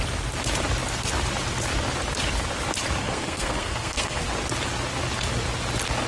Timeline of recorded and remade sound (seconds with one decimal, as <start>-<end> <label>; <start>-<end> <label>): 0.0-3.0 recorded; 3.0-4.2 remade; 4.2-6.1 recorded